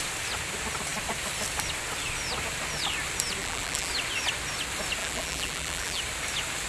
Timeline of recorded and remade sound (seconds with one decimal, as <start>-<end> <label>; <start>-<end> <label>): 0.0-3.4 recorded; 3.4-3.9 remade; 3.9-5.0 recorded; 5.0-6.0 remade; 6.0-6.7 recorded